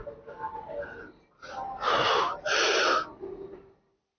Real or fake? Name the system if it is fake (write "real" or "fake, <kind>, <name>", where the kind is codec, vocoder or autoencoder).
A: real